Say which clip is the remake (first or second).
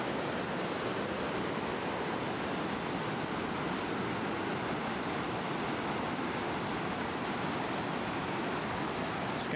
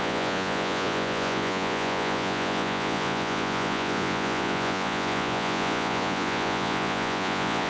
second